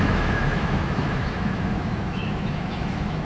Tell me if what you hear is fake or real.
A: fake